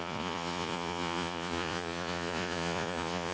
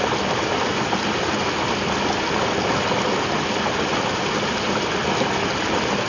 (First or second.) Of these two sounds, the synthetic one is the first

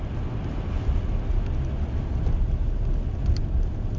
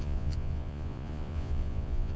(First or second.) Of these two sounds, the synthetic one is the second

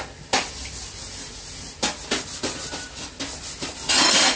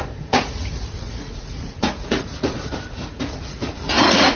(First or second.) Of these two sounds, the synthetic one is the second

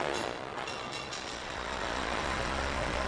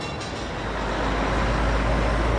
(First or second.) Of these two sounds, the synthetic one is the first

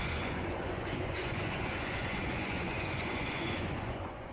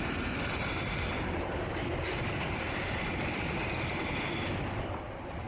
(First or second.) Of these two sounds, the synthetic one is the first